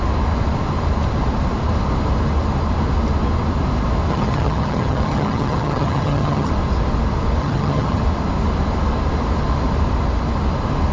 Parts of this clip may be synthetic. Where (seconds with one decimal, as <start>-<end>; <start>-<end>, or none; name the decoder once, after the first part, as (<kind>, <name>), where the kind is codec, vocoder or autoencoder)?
4.1-6.5 (vocoder, HiFi-GAN); 7.4-8.0